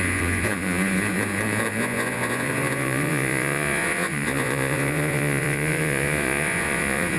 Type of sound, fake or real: fake